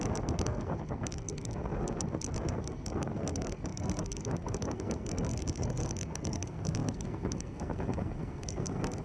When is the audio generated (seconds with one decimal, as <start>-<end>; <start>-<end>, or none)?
0.0-9.0